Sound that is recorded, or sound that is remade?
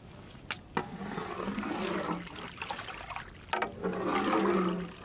recorded